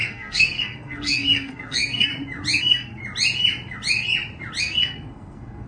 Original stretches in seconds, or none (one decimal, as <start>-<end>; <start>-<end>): 2.1-2.6; 3.0-4.6